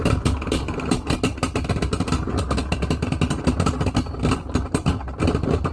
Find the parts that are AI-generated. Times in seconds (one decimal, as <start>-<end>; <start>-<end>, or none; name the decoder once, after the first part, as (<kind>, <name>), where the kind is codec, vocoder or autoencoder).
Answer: none

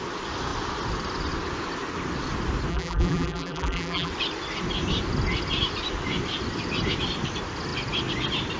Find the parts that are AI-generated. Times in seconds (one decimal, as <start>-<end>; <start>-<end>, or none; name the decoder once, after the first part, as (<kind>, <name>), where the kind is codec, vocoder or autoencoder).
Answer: 2.7-4.1 (vocoder, BigVGAN v2)

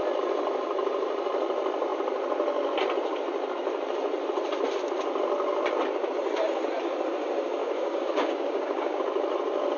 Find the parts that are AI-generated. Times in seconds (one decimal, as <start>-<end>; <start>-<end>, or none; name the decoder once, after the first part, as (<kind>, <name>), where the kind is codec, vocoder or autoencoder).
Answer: 7.6-9.0 (codec, DAC)

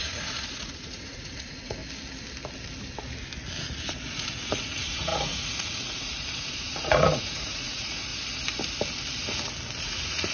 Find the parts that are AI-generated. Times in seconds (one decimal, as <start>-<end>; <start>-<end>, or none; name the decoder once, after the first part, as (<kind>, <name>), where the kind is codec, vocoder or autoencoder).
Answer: 0.0-1.8 (vocoder, Vocos); 4.1-8.1; 9.8-10.3

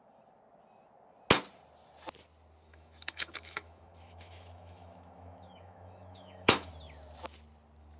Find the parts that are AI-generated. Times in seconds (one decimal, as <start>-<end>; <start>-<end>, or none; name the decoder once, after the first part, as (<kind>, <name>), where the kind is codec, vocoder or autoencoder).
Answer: 2.7-6.7 (autoencoder, DAC-VAE)

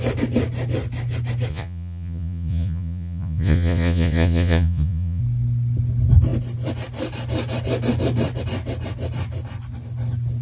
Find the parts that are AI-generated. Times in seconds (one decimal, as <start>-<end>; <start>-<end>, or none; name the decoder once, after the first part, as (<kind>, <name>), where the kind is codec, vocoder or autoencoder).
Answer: 1.5-5.2 (vocoder, Vocos)